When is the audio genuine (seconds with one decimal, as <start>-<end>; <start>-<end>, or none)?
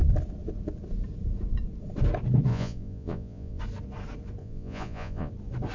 0.0-2.5; 3.6-4.4; 5.3-5.7